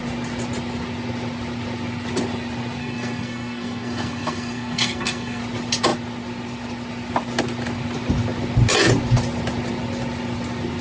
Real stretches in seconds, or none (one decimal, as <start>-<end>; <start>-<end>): 0.0-2.8; 5.4-10.8